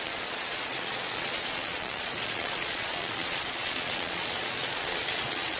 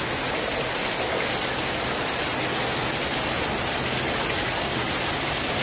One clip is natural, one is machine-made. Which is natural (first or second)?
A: second